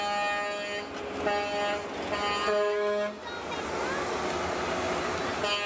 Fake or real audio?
real